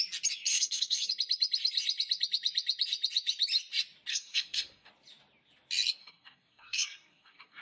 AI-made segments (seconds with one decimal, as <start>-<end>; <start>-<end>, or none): 0.5-1.1; 4.1-4.9; 6.0-7.6